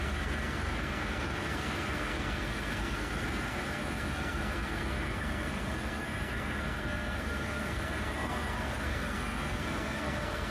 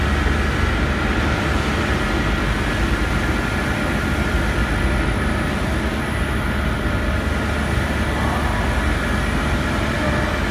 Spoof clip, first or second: first